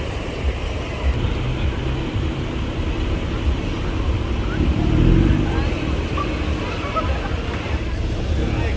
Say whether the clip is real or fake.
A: real